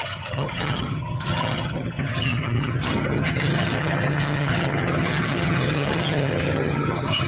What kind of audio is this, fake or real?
fake